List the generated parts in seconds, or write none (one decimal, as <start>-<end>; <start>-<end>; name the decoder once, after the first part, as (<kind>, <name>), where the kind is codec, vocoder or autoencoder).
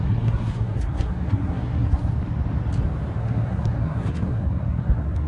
0.0-2.1 (codec, SNAC); 3.2-5.3